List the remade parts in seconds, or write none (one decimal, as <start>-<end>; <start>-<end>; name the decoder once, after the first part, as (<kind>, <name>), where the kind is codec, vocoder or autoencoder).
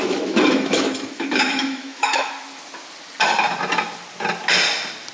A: 0.0-2.3 (autoencoder, DAC-VAE)